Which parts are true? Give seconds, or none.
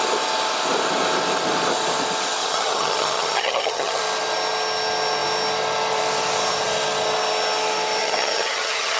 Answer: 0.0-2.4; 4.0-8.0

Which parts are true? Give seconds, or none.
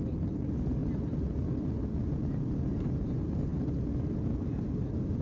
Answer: 0.0-5.2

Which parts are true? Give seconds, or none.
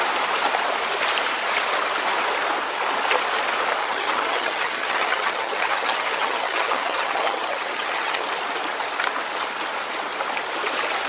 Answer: 0.0-3.8; 8.3-11.1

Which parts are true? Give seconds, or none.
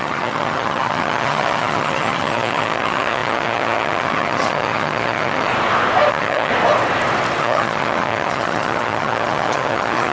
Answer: 5.5-6.1; 6.5-7.4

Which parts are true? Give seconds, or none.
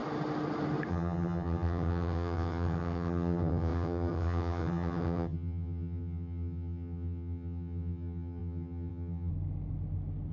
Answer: 0.0-0.9; 9.3-10.3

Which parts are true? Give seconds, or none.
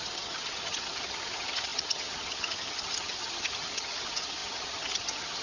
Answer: none